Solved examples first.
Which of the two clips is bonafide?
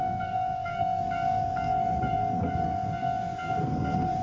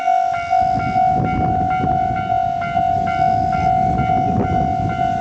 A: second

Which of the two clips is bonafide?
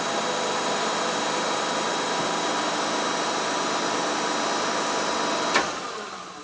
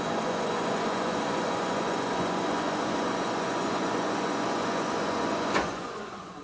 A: first